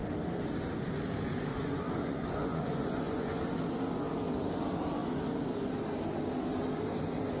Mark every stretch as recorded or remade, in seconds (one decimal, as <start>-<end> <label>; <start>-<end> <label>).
0.0-1.5 recorded; 1.5-3.4 remade; 3.4-7.4 recorded